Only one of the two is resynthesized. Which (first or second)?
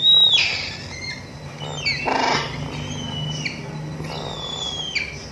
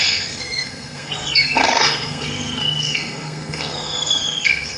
second